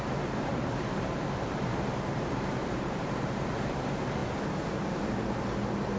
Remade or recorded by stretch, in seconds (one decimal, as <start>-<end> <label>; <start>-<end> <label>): 0.0-0.5 recorded; 0.5-3.1 remade; 3.1-6.0 recorded